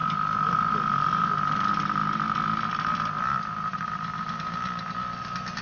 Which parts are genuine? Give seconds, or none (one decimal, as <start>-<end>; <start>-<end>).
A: 0.0-5.6